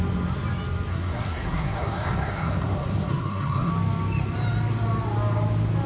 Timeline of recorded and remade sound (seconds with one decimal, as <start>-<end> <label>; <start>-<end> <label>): 0.0-0.9 recorded; 0.9-3.7 remade; 3.7-5.9 recorded